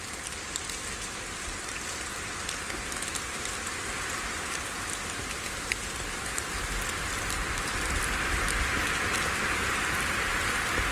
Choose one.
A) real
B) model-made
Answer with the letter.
A